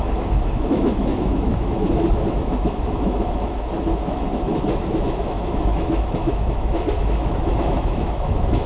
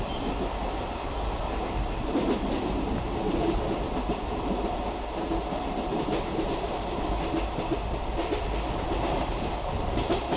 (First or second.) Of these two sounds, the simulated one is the first